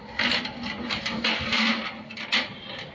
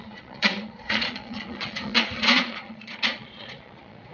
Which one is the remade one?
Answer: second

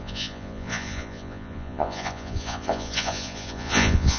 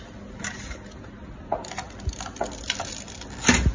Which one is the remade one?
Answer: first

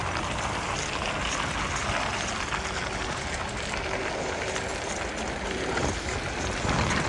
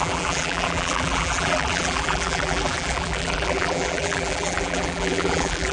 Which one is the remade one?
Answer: second